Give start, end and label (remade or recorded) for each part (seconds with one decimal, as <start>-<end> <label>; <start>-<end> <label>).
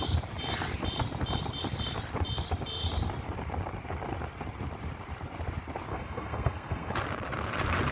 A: 0.0-5.9 recorded; 5.9-6.9 remade; 6.9-7.9 recorded